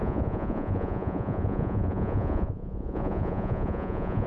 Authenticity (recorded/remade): remade